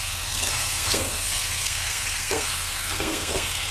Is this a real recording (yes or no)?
no